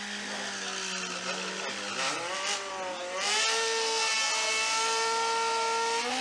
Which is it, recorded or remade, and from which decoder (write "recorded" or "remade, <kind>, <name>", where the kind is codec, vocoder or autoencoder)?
recorded